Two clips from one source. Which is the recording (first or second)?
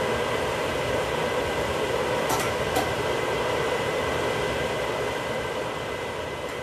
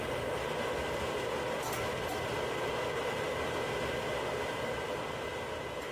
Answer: second